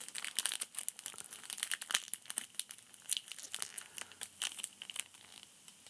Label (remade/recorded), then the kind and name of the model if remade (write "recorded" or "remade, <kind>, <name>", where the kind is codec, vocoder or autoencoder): recorded